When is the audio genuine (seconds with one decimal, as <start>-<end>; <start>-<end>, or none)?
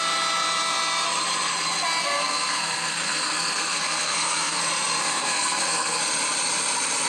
0.0-2.0; 4.6-5.0; 6.0-7.1